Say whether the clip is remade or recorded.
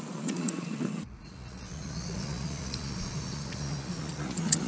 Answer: remade